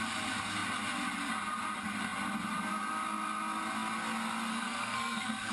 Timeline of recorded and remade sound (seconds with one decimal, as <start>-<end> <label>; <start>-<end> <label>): 0.0-4.5 recorded; 4.5-5.5 remade